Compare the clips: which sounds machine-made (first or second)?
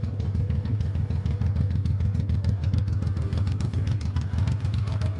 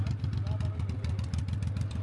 first